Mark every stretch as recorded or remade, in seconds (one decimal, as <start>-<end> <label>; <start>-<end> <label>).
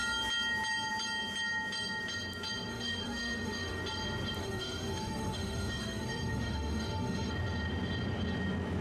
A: 0.0-2.7 recorded; 2.7-3.8 remade; 3.8-4.4 recorded; 4.4-7.3 remade; 7.3-8.8 recorded